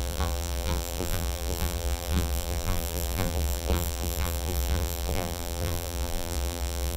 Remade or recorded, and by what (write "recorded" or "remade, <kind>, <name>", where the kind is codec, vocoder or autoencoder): remade, vocoder, BigVGAN v2